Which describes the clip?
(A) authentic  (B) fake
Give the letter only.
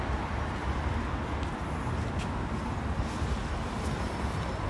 A